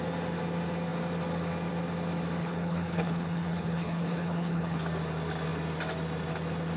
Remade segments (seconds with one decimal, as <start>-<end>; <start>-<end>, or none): 2.4-4.8